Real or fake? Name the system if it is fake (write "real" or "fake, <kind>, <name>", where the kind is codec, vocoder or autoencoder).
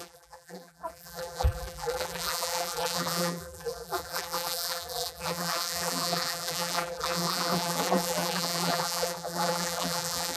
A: fake, vocoder, BigVGAN v2